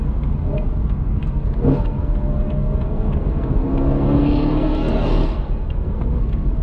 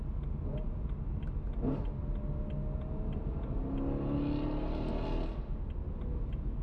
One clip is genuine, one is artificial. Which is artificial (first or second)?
first